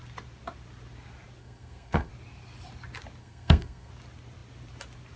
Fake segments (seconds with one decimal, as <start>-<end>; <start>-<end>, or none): 1.4-2.1; 3.2-3.9